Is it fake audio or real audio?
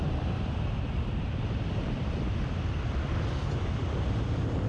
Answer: fake